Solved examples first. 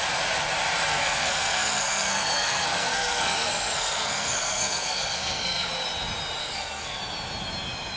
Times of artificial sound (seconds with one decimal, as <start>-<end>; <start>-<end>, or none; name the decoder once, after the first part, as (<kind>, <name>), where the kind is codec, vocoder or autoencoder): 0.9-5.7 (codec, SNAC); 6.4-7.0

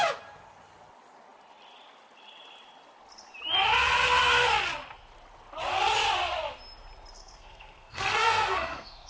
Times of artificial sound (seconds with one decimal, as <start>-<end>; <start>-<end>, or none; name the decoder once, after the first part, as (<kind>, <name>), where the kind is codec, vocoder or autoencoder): 7.2-9.1 (codec, SNAC)

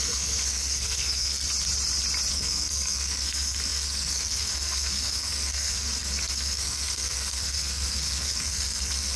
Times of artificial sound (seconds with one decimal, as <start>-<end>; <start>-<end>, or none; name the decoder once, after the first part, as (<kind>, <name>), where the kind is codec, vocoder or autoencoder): 0.0-1.4 (codec, SNAC); 2.3-9.2